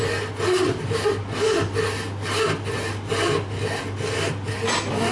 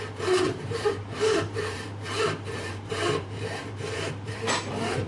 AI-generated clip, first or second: second